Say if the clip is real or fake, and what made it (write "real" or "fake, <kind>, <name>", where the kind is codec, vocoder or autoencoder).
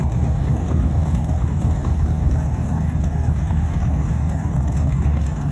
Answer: fake, codec, DAC